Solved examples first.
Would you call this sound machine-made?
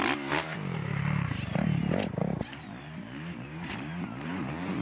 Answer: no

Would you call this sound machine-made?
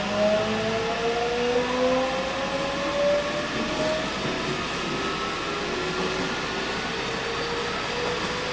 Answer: no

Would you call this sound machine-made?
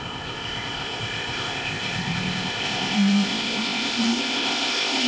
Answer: yes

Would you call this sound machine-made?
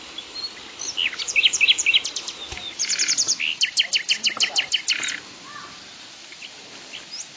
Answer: no